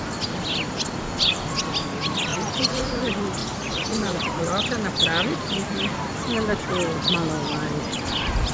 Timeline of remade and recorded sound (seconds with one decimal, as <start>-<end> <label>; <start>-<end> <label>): 0.0-2.3 recorded; 2.3-3.0 remade; 3.0-3.4 recorded; 3.4-4.4 remade; 4.4-8.5 recorded

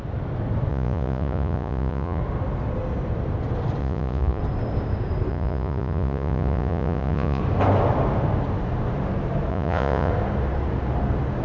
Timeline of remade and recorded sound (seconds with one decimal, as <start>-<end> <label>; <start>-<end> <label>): 0.0-0.7 recorded; 0.7-2.2 remade; 2.2-3.8 recorded; 3.8-4.4 remade; 4.4-5.3 recorded; 5.3-7.4 remade; 7.4-9.5 recorded; 9.5-10.1 remade; 10.1-11.4 recorded